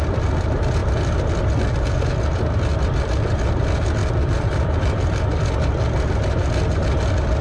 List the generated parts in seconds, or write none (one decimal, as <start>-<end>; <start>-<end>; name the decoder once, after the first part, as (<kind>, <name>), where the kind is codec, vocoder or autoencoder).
2.7-3.6 (vocoder, BigVGAN v2); 4.0-5.2